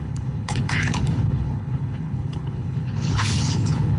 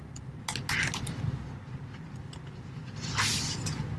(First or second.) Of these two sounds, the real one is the second